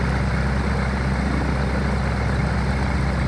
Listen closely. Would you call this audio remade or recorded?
recorded